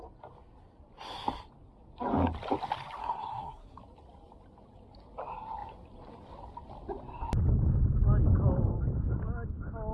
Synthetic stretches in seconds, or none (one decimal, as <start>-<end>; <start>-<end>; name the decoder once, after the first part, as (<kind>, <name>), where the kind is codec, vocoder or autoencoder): 3.0-3.8 (codec, SNAC)